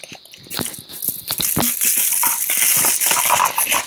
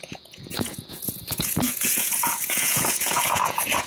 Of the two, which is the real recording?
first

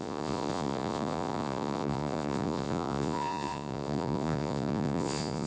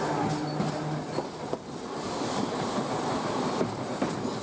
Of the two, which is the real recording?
second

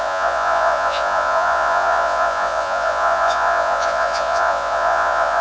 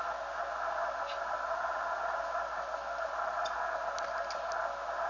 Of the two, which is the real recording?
second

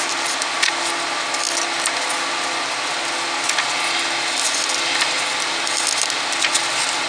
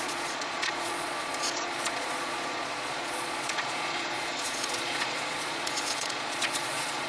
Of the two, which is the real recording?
first